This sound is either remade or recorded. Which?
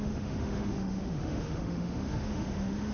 remade